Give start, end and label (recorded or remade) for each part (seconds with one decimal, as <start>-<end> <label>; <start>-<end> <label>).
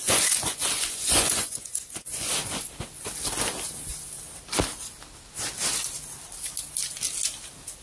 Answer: 0.0-2.3 remade; 2.3-7.8 recorded